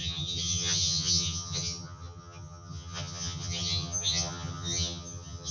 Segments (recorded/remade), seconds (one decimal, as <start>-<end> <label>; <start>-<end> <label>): 0.0-5.5 remade